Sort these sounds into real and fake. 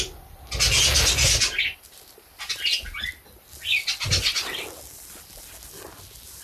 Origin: real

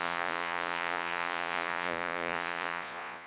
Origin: fake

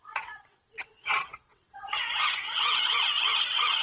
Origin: fake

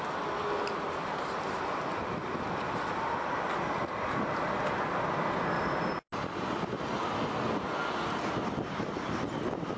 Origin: real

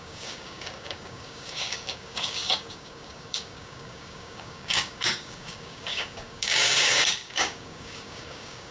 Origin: fake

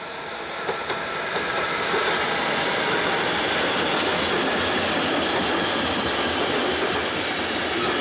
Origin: real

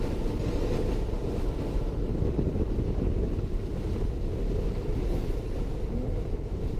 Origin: real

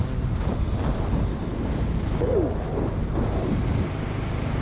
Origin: real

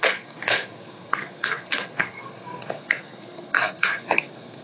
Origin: fake